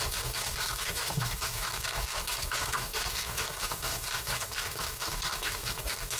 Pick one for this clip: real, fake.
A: fake